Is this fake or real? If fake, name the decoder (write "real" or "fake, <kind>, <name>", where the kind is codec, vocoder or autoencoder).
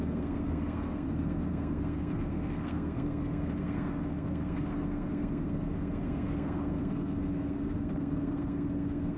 fake, codec, SNAC